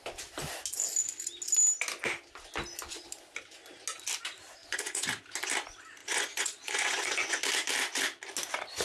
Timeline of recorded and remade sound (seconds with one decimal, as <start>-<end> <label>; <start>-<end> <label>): 0.0-4.6 recorded; 4.6-5.2 remade; 5.2-6.0 recorded; 6.0-7.4 remade; 7.4-8.8 recorded